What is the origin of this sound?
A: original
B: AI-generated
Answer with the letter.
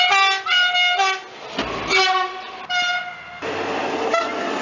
A